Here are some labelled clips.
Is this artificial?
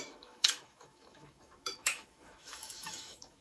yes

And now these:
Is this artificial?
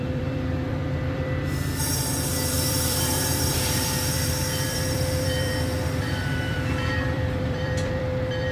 yes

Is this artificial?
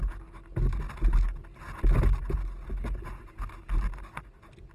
no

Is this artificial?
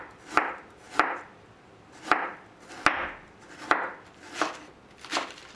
no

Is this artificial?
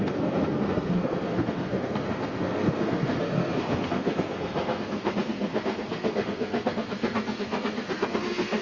yes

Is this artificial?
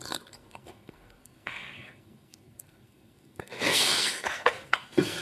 yes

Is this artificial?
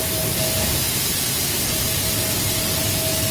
no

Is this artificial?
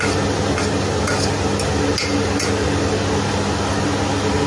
no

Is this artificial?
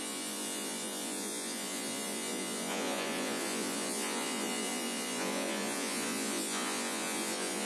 yes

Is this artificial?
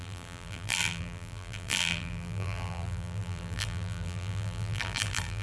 yes